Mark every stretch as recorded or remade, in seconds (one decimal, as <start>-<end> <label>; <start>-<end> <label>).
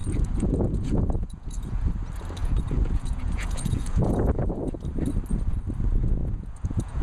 0.0-1.9 remade; 1.9-2.4 recorded; 2.4-4.8 remade; 4.8-6.2 recorded; 6.2-7.0 remade